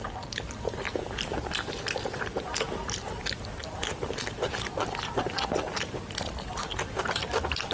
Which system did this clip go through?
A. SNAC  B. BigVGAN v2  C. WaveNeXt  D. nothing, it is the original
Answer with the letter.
D